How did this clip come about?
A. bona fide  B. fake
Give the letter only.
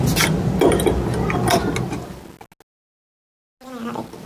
A